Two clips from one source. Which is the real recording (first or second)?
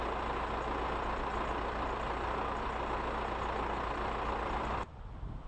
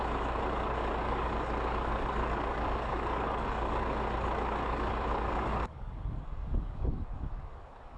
first